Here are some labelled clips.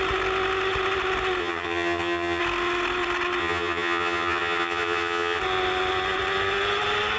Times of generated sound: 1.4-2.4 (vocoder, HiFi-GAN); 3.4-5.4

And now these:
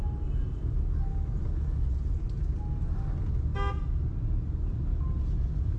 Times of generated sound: none

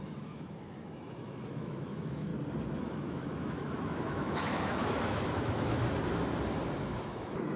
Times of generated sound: 0.0-2.3 (autoencoder, DAC-VAE); 2.8-5.8; 6.8-7.6

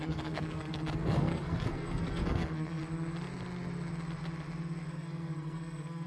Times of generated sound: 0.0-2.8 (codec, SNAC); 4.9-6.1

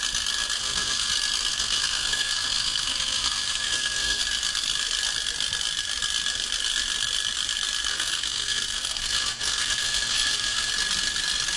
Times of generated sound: 0.6-1.1 (codec, SNAC); 1.5-4.2; 7.9-10.7

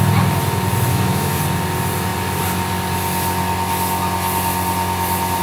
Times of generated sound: 0.9-1.4 (autoencoder, DAC-VAE)

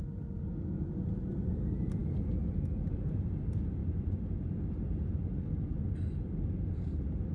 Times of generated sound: none